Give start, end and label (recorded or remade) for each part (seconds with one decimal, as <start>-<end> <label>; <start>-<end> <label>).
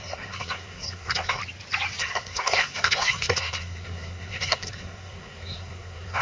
0.0-1.4 remade; 1.4-2.0 recorded; 2.0-6.2 remade